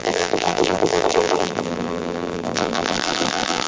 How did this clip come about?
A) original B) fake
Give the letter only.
B